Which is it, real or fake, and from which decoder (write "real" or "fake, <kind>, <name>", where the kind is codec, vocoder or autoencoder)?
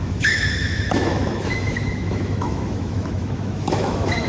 fake, autoencoder, DAC-VAE